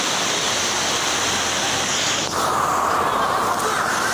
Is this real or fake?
real